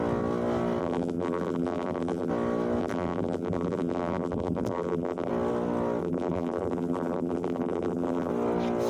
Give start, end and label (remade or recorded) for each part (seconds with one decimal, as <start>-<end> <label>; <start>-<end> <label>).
0.0-0.8 recorded; 0.8-2.3 remade; 2.3-2.8 recorded; 2.8-5.3 remade; 5.3-6.0 recorded; 6.0-8.3 remade; 8.3-8.9 recorded